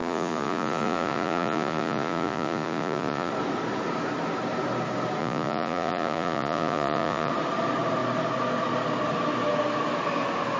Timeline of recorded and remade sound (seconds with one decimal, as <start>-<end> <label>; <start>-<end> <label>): 0.0-3.3 remade; 3.3-5.2 recorded; 5.2-7.3 remade; 7.3-10.6 recorded